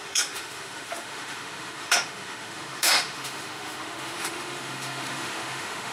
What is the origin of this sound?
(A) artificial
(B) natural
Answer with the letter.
A